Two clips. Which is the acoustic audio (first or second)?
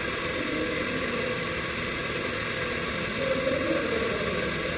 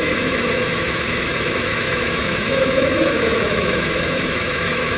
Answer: first